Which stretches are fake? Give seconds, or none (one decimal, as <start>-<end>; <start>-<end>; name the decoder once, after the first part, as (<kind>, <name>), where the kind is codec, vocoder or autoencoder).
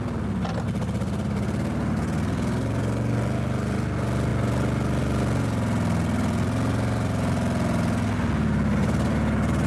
none